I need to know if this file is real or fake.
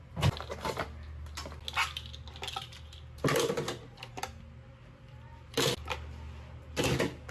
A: real